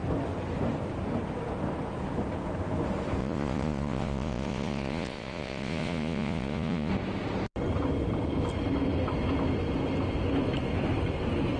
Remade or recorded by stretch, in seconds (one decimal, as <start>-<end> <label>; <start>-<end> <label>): 0.0-3.2 recorded; 3.2-6.9 remade; 6.9-11.6 recorded